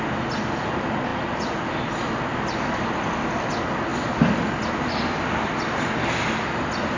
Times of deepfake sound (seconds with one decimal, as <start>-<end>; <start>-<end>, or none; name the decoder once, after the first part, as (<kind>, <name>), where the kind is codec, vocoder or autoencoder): none